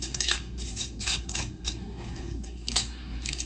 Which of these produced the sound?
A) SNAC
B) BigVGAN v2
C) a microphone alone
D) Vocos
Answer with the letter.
A